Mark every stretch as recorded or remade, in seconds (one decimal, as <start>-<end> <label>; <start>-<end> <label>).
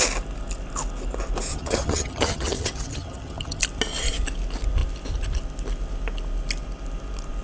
0.0-1.5 recorded; 1.5-3.6 remade; 3.6-7.4 recorded